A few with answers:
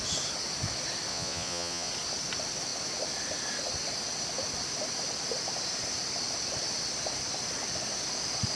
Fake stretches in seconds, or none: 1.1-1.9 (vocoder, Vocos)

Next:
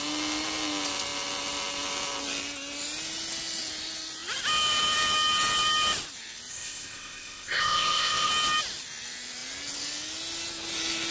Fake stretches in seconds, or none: 6.5-8.3 (codec, ZipCodec)

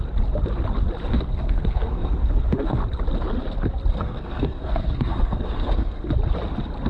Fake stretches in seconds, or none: 1.1-2.8 (codec, SNAC); 3.9-6.0

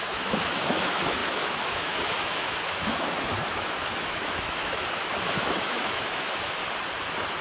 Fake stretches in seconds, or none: 0.0-6.6 (autoencoder, DAC-VAE)

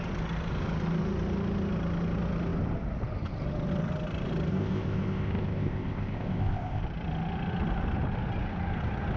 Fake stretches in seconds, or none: 4.5-6.8 (codec, ZipCodec)

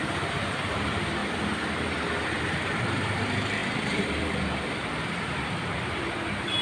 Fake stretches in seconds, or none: 0.0-1.2 (vocoder, BigVGAN v2); 2.5-6.6